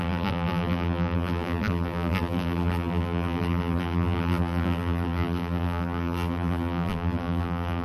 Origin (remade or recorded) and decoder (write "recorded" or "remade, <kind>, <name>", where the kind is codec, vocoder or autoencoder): remade, vocoder, BigVGAN v2